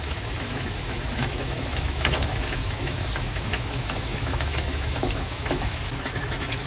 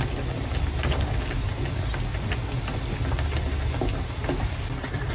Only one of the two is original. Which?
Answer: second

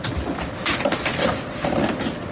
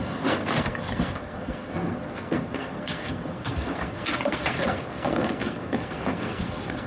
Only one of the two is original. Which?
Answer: first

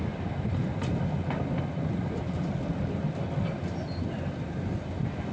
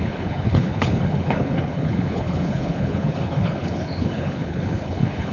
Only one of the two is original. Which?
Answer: first